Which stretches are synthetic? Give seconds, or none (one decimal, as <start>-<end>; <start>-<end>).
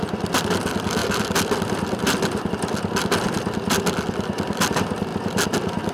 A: none